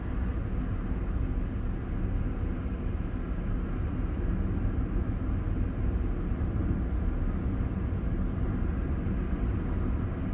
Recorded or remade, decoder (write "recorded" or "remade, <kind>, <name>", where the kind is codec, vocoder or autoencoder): recorded